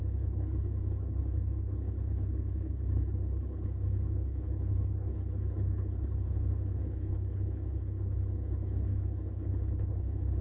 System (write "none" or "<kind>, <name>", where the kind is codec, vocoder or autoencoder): codec, HILCodec